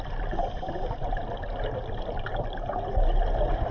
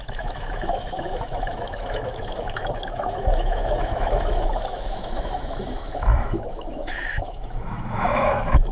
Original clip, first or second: first